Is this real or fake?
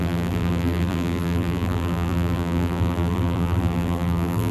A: fake